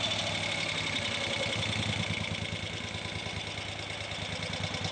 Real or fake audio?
real